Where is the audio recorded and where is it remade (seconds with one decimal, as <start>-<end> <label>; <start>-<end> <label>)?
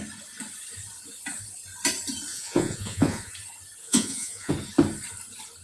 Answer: 0.0-2.3 recorded; 2.3-3.3 remade; 3.3-3.8 recorded; 3.8-4.5 remade; 4.5-5.6 recorded